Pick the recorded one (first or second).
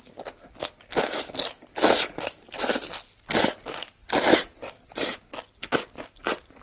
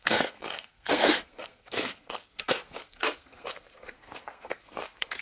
first